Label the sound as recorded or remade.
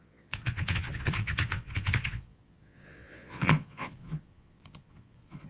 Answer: remade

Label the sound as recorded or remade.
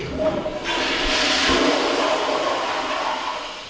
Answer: recorded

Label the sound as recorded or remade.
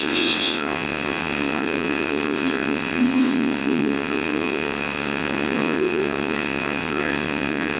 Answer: remade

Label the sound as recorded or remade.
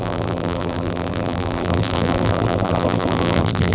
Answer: remade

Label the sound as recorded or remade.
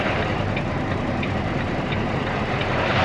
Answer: remade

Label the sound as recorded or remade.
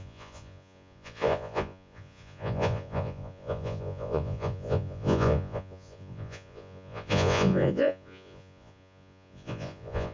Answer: remade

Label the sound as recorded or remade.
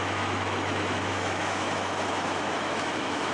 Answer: remade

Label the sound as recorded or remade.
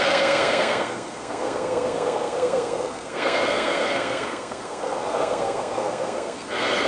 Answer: remade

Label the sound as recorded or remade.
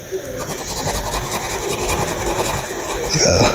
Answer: recorded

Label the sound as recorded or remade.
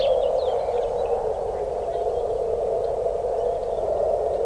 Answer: recorded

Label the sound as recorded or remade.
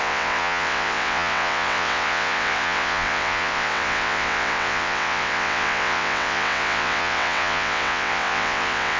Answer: remade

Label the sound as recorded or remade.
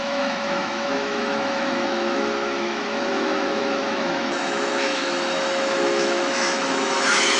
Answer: remade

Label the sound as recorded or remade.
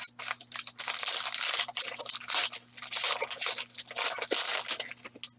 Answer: recorded